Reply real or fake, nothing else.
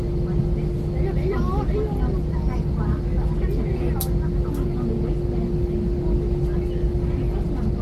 real